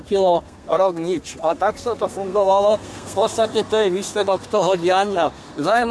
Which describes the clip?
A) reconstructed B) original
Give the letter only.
A